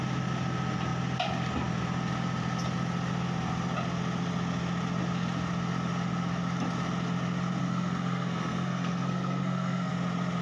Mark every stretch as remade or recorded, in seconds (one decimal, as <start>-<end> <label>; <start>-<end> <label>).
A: 0.0-7.6 recorded; 7.6-9.9 remade; 9.9-10.4 recorded

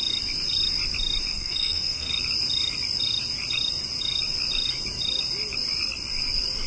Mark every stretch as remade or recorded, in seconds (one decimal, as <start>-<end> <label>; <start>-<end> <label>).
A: 0.0-1.3 recorded; 1.3-2.1 remade; 2.1-6.7 recorded

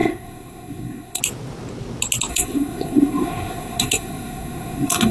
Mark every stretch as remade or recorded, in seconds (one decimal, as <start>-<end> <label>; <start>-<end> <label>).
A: 0.0-1.2 remade; 1.2-2.3 recorded; 2.3-5.1 remade

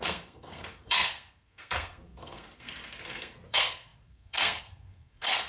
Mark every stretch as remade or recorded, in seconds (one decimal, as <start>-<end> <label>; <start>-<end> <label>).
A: 0.0-5.5 remade